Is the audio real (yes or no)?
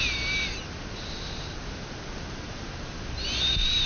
yes